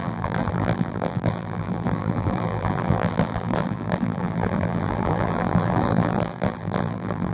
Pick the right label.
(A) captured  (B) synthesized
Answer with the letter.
B